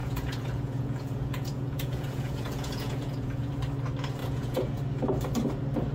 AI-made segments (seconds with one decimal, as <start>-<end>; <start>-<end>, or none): 0.0-3.5; 4.2-4.8